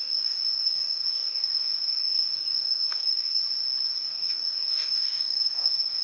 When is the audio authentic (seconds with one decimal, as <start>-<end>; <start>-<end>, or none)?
3.4-3.9